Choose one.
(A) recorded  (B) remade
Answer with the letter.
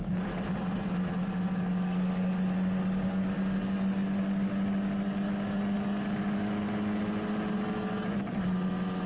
A